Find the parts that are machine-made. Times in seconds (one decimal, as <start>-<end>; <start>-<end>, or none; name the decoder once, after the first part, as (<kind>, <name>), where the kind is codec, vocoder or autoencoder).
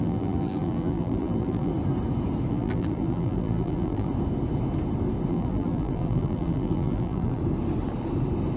0.0-1.7 (vocoder, BigVGAN v2); 2.5-4.1; 5.3-7.4